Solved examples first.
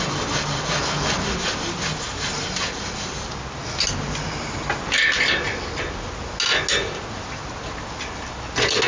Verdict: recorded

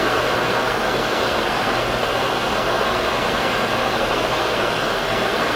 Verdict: remade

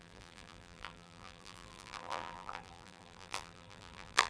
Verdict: remade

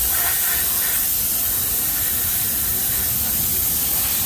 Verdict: recorded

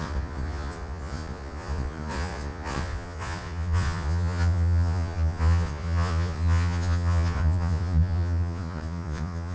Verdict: remade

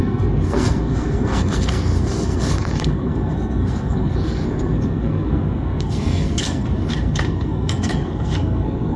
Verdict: remade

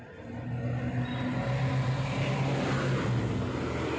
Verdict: recorded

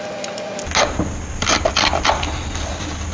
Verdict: recorded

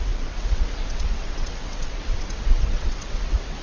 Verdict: remade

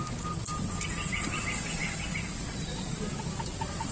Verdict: recorded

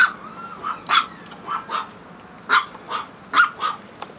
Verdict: recorded